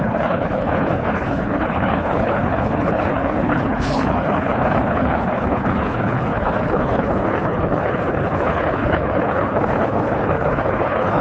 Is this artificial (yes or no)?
yes